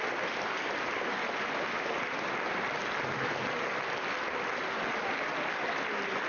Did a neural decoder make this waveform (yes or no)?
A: no